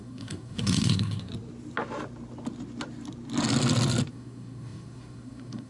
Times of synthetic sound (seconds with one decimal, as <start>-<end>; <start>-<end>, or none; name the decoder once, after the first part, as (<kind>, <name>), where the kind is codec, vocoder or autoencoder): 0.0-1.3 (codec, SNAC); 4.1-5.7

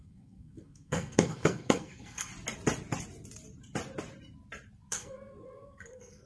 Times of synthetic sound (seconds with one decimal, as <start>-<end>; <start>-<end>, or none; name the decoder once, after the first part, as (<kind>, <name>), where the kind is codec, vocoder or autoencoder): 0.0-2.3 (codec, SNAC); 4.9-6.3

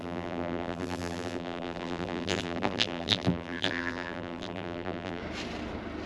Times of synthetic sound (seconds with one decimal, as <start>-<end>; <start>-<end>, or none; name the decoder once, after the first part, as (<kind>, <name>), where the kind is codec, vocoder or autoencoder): 0.0-5.2 (vocoder, BigVGAN v2)

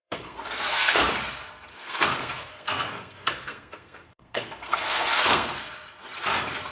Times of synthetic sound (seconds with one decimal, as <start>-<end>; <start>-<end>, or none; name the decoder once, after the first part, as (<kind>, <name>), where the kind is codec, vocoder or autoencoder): 0.0-1.0 (codec, SNAC); 1.7-5.6